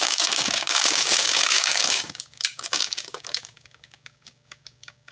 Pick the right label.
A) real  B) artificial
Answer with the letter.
B